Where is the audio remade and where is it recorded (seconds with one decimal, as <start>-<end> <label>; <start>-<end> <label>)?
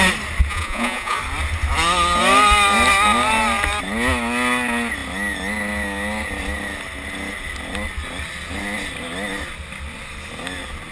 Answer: 0.0-0.5 recorded; 0.5-1.2 remade; 1.2-10.9 recorded